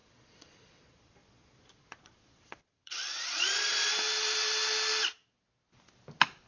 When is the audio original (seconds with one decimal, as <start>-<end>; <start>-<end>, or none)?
3.9-6.5